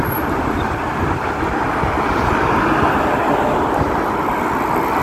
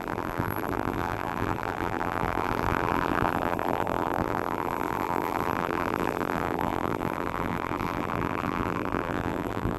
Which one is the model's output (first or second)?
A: second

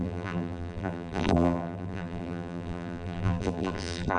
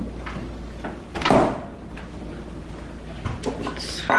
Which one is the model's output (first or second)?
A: first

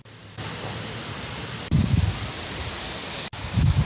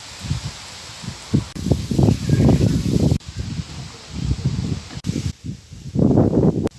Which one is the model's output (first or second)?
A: first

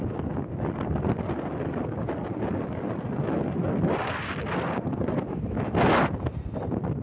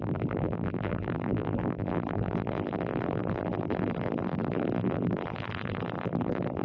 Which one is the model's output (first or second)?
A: second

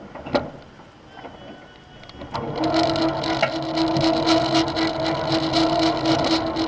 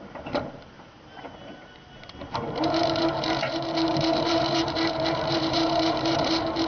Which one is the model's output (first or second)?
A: second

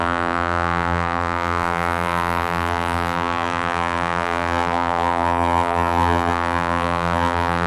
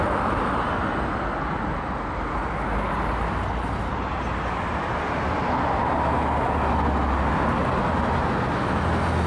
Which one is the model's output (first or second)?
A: first